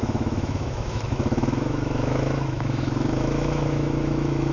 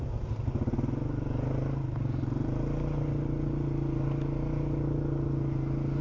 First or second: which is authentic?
second